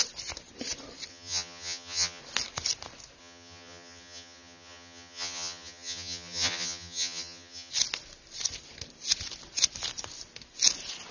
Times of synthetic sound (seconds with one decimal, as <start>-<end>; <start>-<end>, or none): 1.1-2.2; 3.2-7.7